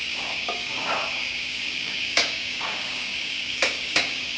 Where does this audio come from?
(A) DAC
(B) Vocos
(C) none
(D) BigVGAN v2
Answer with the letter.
A